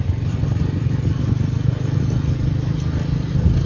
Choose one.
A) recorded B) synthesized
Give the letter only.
A